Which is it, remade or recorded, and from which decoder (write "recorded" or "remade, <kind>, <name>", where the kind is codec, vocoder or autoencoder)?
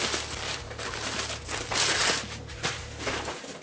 recorded